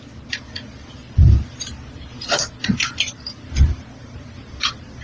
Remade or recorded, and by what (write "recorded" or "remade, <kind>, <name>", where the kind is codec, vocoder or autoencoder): recorded